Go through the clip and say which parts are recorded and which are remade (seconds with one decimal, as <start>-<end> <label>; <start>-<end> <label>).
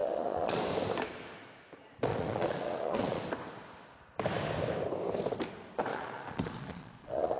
0.0-0.6 remade; 0.6-2.1 recorded; 2.1-3.2 remade; 3.2-5.9 recorded; 5.9-7.4 remade